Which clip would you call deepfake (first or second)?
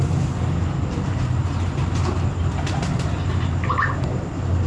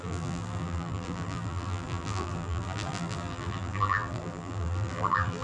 second